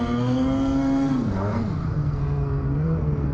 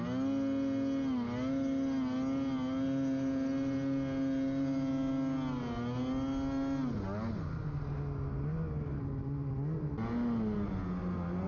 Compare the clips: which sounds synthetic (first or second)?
first